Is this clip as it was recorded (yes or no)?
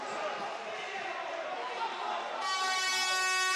yes